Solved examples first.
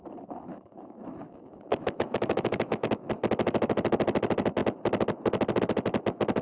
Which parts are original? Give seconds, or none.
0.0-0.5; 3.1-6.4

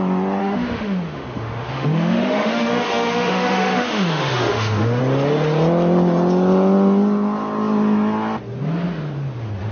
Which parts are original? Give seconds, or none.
0.0-0.4; 5.0-9.7

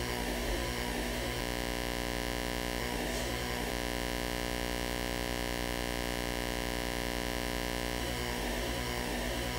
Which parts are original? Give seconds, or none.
1.4-2.8; 3.7-8.0

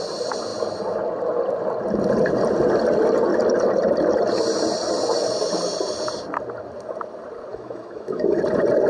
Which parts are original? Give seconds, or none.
0.0-7.5; 8.4-8.9

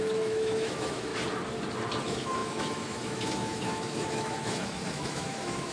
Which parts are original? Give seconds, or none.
1.1-2.0

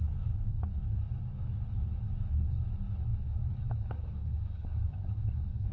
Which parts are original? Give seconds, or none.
none